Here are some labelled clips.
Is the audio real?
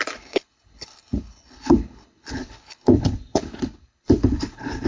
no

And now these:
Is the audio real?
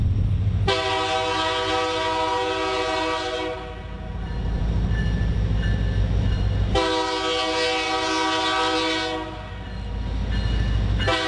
yes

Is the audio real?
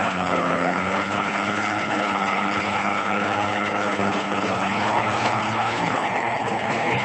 no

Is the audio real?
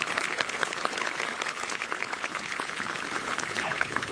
no